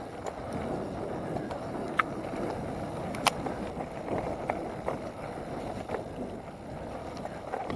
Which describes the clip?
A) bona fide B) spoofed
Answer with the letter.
A